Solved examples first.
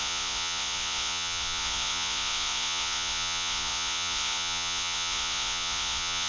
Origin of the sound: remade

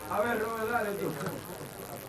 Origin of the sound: recorded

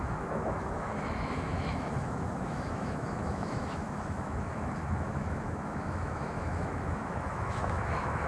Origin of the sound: remade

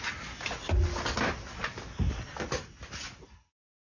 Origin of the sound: recorded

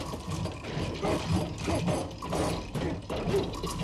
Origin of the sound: recorded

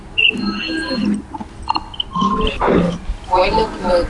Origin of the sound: recorded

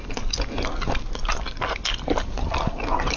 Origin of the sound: recorded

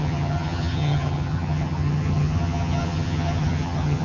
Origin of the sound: remade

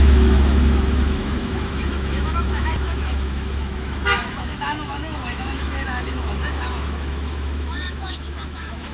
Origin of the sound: remade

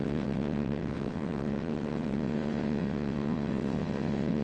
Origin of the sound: remade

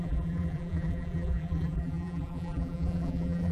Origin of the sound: remade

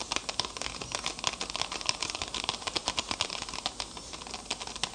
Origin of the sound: recorded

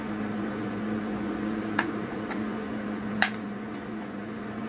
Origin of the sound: remade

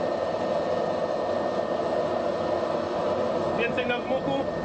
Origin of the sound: recorded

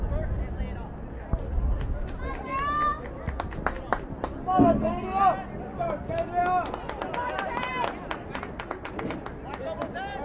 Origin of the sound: recorded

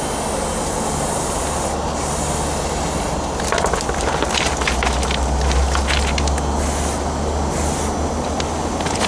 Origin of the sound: recorded